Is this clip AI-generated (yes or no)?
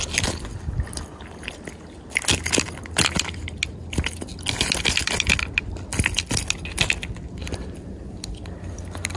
no